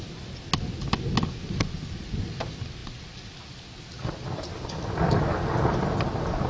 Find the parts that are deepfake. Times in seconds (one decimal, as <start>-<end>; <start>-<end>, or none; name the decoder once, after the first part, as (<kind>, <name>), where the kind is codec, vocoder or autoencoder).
none